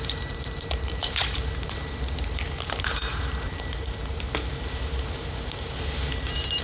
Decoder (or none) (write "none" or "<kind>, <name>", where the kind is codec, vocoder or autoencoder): vocoder, BigVGAN v2